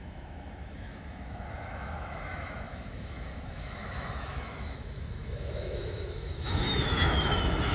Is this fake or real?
fake